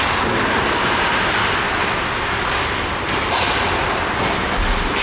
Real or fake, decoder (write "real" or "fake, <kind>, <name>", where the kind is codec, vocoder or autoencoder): real